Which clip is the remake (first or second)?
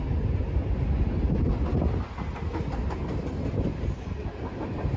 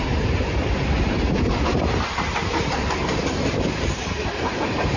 second